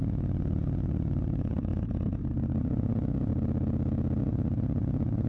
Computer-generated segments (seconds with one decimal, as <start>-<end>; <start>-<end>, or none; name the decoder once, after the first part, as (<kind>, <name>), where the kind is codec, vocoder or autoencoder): 0.0-1.7 (vocoder, Vocos); 2.6-3.3; 4.2-5.3